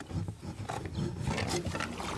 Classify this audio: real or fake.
real